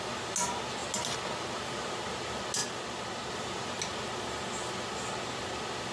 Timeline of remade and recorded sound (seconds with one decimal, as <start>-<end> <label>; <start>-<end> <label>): 0.0-5.9 recorded

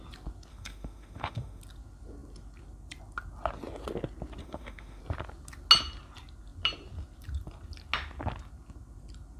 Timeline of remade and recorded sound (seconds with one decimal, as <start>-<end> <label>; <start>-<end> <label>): 0.0-0.5 recorded; 0.5-1.6 remade; 1.6-4.4 recorded; 4.4-5.0 remade; 5.0-9.4 recorded